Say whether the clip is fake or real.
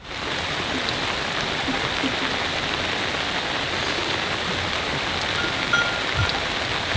real